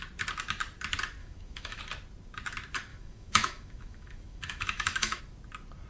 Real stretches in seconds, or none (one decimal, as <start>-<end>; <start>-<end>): 0.0-1.2; 1.8-2.9; 5.2-5.9